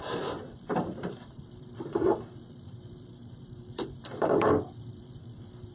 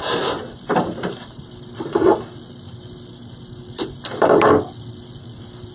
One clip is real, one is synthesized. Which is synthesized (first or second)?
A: first